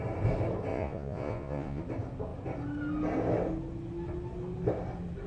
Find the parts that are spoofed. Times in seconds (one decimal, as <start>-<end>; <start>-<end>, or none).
0.7-1.8